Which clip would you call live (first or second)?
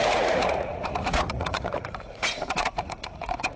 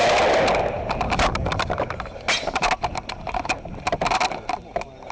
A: second